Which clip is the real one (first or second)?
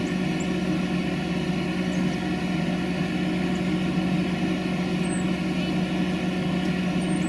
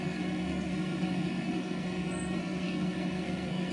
first